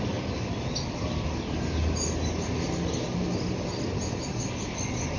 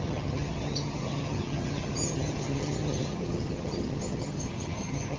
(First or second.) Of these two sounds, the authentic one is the first